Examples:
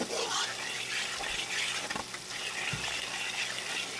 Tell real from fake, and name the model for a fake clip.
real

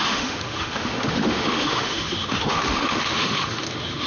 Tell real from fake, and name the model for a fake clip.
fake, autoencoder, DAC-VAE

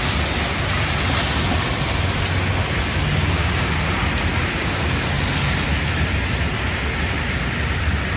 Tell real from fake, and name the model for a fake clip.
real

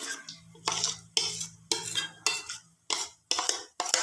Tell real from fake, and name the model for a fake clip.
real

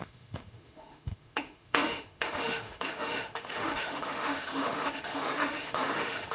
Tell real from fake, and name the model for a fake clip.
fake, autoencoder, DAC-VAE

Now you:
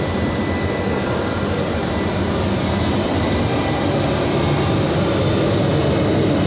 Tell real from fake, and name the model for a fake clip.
real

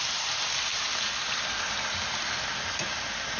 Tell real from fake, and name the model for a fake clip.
real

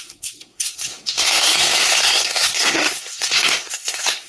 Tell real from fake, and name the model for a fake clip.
fake, codec, SNAC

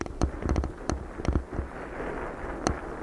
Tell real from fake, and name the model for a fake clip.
real